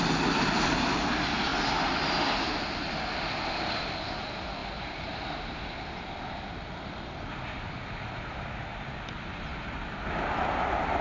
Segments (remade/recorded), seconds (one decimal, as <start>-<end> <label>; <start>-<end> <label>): 0.0-11.0 recorded